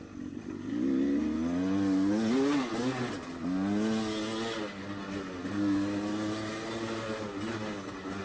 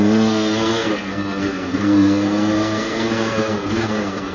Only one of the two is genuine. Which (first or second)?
first